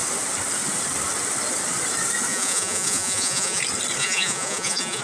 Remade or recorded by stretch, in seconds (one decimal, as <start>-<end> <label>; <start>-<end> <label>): 0.0-2.3 recorded; 2.3-3.6 remade; 3.6-4.0 recorded; 4.0-5.0 remade

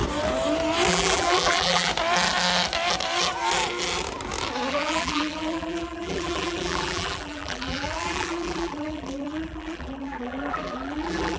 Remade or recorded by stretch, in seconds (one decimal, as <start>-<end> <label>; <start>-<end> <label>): 0.0-0.9 recorded; 0.9-1.9 remade; 1.9-4.7 recorded; 4.7-11.4 remade

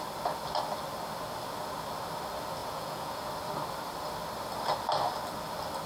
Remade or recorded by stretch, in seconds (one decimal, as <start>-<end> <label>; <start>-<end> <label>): 0.0-2.6 recorded; 2.6-3.3 remade; 3.3-5.9 recorded

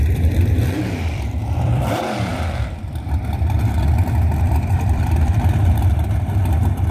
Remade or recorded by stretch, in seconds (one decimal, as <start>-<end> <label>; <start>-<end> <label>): 0.0-6.9 remade

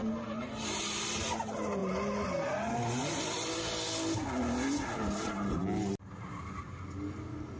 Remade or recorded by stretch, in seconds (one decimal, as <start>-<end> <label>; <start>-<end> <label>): 0.0-7.6 recorded

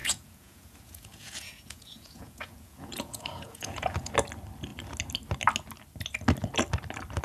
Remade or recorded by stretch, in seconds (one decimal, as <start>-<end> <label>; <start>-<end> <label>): 0.0-4.1 remade; 4.1-7.2 recorded